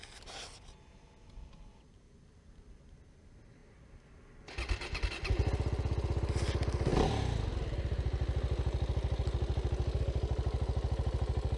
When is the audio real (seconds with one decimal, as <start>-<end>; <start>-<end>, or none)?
0.0-11.6